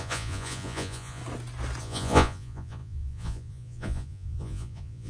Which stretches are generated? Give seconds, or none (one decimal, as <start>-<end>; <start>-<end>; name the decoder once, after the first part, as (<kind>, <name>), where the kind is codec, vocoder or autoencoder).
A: 0.0-1.2 (vocoder, Vocos); 1.8-5.1